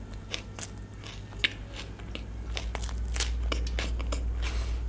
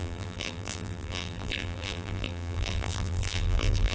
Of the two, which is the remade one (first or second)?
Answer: second